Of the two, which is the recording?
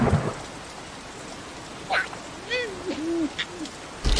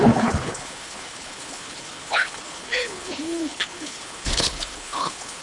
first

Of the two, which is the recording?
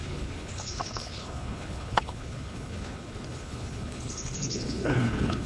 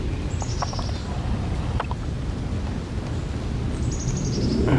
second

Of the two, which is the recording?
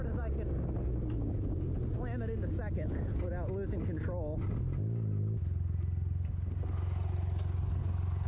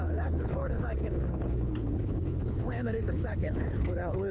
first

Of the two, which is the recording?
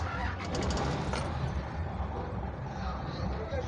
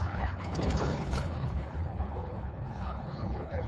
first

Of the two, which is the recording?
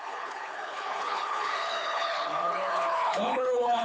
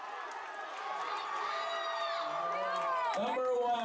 second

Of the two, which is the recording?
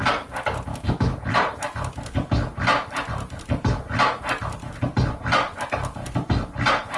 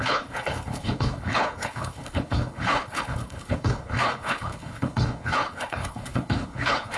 first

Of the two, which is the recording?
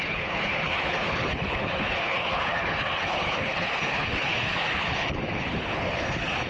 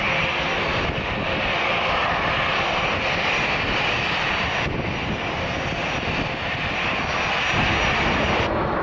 second